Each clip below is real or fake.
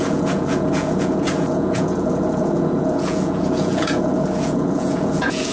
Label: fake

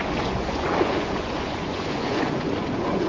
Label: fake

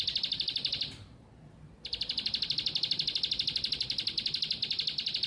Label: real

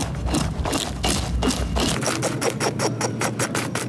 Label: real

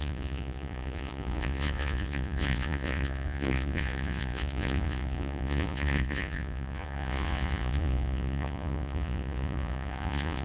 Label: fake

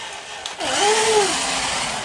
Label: real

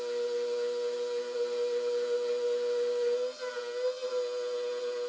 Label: real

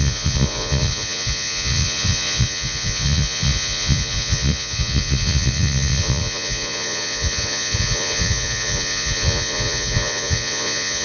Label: fake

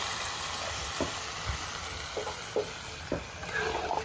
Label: real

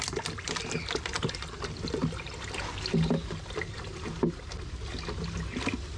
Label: real